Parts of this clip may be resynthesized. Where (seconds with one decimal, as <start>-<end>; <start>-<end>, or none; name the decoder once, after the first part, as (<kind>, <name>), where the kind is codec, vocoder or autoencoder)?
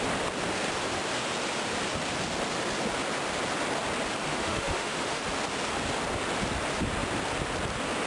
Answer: 4.3-5.2 (autoencoder, DAC-VAE)